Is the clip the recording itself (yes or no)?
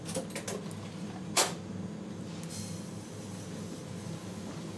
yes